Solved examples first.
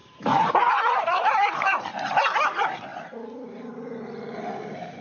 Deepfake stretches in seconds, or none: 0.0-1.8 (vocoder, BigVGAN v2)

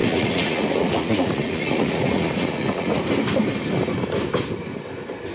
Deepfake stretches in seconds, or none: 0.0-3.0 (vocoder, Vocos)

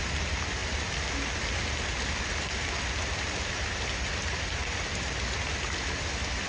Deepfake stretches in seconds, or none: none

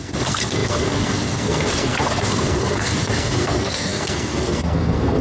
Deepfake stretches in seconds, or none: 0.0-5.2 (codec, SNAC)

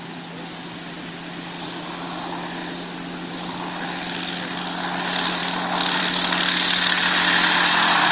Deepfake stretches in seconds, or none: none

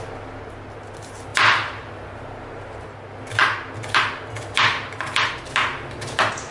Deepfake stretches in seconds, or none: none

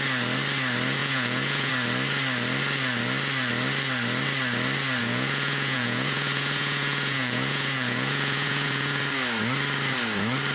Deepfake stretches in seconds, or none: 1.0-1.7 (vocoder, Vocos); 5.0-9.0